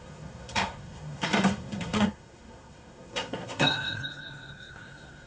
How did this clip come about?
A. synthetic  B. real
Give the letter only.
A